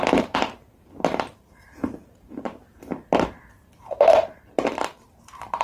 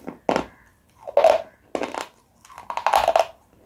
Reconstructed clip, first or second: first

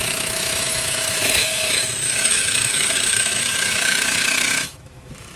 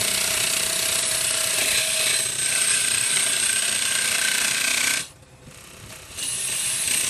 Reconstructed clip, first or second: first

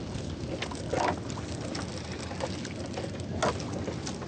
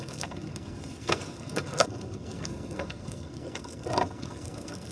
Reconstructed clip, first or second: second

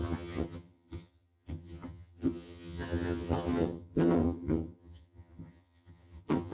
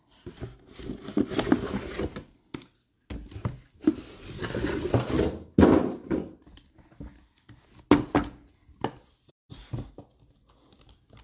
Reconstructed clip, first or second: first